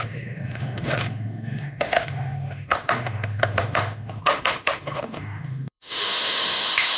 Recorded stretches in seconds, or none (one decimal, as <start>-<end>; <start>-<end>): none

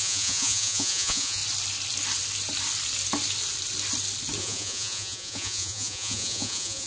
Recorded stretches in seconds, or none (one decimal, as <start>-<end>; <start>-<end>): 1.4-4.4

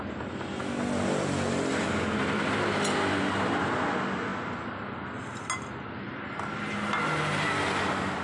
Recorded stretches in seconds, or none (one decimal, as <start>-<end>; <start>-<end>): 0.0-8.2

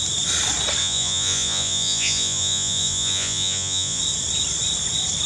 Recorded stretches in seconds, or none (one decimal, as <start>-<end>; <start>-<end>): 0.0-0.8; 4.0-5.3

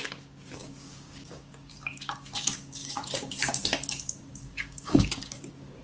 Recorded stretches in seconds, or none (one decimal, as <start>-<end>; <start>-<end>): none